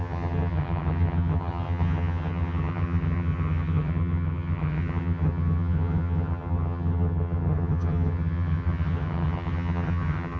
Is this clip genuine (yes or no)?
no